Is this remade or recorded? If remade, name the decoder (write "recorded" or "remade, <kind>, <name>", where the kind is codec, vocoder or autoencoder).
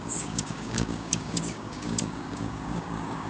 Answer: remade, codec, DAC